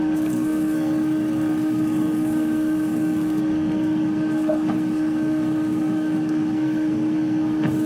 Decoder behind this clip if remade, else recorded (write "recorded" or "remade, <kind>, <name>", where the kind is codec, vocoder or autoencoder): remade, codec, SNAC